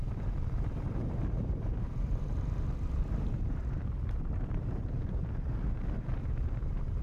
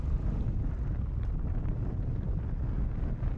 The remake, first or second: first